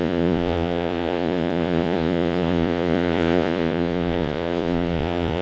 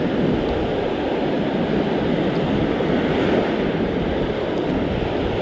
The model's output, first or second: first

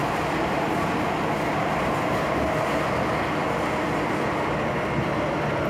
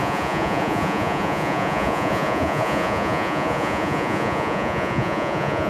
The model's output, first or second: second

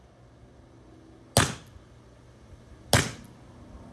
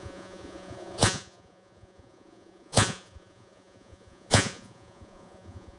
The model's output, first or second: second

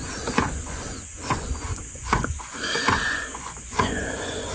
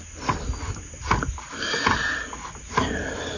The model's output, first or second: first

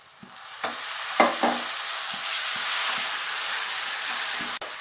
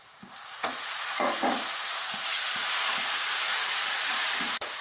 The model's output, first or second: second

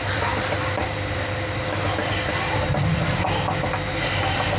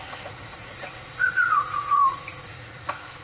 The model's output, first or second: second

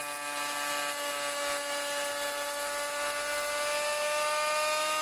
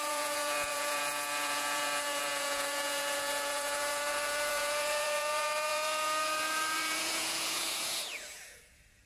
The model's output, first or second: second